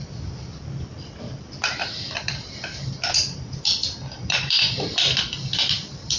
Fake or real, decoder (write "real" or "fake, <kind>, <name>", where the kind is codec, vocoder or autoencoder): fake, vocoder, BigVGAN v2